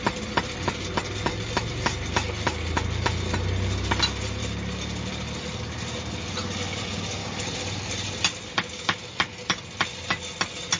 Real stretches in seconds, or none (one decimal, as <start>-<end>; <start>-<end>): 0.0-10.8

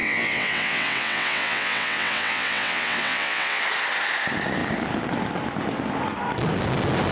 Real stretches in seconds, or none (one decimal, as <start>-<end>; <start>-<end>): 3.6-7.1

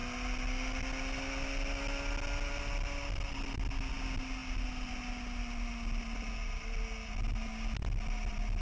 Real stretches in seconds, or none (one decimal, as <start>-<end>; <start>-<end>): 0.0-8.6

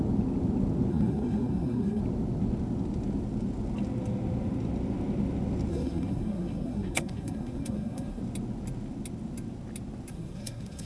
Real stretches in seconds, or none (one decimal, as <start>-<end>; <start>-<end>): 0.0-0.9; 2.0-5.7; 8.2-10.1

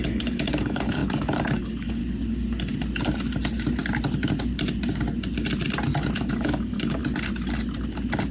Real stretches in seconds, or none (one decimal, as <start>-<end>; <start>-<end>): 2.0-6.2; 7.0-8.3

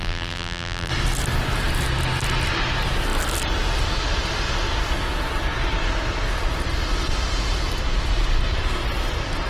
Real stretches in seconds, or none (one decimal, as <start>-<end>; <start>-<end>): 0.9-9.5

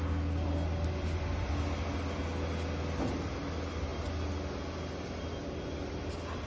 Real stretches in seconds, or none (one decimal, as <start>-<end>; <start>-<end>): 0.0-6.5